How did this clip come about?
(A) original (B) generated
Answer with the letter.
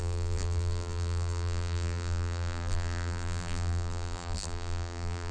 B